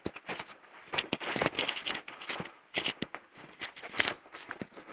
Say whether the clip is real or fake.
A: real